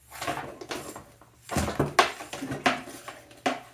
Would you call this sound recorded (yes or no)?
yes